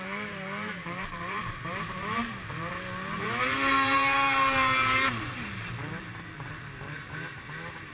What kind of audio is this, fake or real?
fake